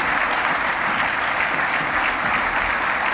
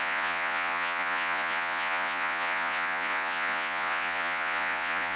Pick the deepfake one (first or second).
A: second